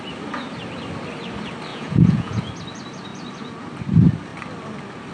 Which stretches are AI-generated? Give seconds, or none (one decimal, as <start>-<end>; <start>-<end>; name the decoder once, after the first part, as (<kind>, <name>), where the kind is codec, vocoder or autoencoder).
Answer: 1.7-2.5 (vocoder, Vocos)